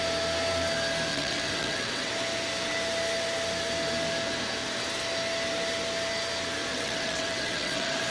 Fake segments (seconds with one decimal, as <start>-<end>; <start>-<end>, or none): 1.1-2.1; 6.7-8.1